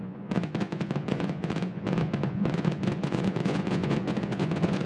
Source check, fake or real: fake